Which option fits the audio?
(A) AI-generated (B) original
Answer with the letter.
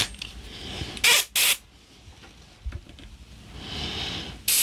B